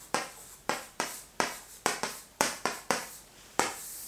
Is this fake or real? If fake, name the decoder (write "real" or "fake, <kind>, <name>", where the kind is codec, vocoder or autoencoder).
fake, vocoder, BigVGAN v2